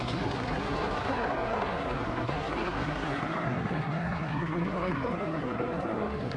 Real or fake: fake